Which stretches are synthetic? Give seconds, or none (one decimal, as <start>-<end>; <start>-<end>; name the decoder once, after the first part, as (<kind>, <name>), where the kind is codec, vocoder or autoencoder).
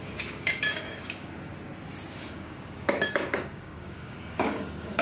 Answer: 0.0-1.5 (codec, DAC); 2.1-5.0